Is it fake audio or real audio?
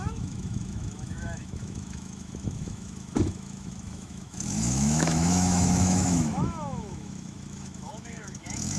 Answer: fake